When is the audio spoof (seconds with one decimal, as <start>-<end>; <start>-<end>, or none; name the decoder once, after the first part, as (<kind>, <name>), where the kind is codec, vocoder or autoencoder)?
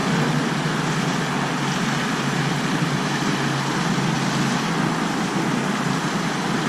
none